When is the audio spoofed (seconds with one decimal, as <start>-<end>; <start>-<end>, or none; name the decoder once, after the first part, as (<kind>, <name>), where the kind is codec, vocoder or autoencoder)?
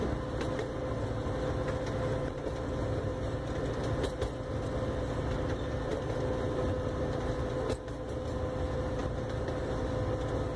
none